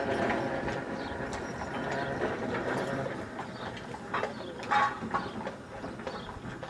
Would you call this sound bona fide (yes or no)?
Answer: yes